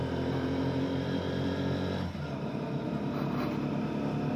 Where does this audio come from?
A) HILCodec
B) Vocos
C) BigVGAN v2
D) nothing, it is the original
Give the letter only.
D